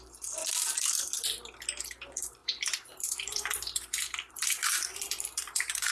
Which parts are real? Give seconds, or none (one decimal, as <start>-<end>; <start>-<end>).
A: 0.4-1.8